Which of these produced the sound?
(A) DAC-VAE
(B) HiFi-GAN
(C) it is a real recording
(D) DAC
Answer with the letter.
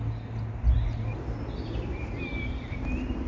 C